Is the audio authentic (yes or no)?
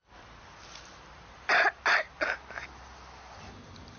yes